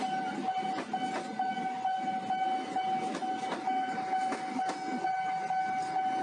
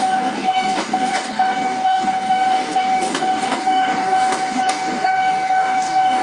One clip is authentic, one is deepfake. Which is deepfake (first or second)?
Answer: second